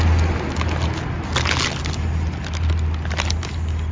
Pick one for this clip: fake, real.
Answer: real